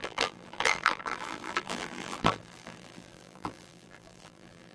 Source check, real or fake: fake